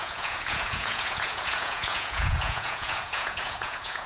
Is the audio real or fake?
fake